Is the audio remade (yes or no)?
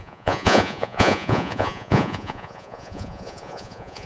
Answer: yes